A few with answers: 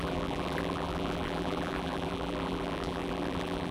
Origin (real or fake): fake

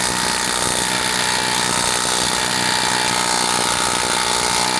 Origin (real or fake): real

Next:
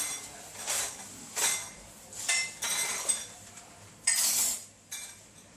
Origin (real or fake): fake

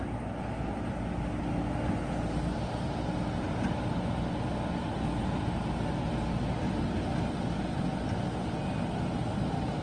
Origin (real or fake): real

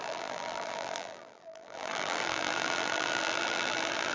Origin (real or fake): fake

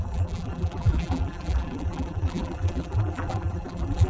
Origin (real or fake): fake